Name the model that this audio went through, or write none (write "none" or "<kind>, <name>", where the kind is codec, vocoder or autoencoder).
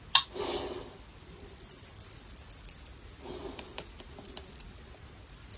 none